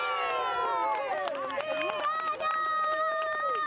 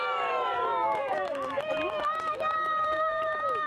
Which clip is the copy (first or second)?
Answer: second